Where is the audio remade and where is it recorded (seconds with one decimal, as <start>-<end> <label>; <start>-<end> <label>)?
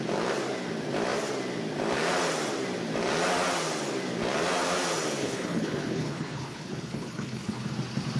0.0-5.2 recorded; 5.2-7.7 remade; 7.7-8.2 recorded